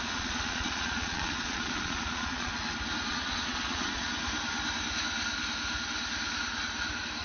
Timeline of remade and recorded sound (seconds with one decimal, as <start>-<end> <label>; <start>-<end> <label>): 0.0-2.5 remade; 2.5-3.1 recorded; 3.1-4.1 remade; 4.1-7.2 recorded